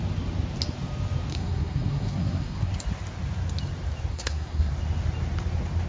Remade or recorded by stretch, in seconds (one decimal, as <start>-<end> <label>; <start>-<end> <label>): 0.0-1.3 recorded; 1.3-2.7 remade; 2.7-4.1 recorded; 4.1-4.7 remade; 4.7-5.9 recorded